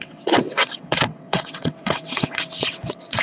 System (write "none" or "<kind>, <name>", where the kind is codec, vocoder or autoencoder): vocoder, WaveNeXt